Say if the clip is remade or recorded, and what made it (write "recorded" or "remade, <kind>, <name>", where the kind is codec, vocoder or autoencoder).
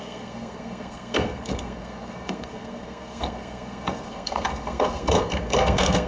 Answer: remade, codec, SNAC